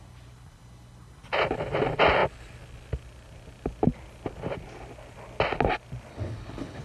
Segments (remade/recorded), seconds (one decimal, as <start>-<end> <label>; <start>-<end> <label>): 0.0-6.1 recorded; 6.1-6.8 remade